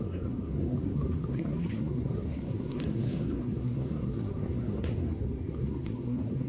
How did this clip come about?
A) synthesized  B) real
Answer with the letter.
A